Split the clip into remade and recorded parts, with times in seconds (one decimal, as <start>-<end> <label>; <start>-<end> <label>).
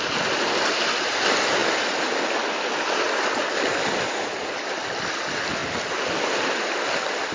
0.0-7.3 recorded